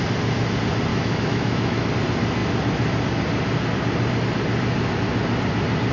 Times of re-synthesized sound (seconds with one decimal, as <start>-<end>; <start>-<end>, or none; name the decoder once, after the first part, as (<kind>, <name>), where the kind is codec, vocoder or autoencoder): 0.9-1.9 (autoencoder, DAC-VAE)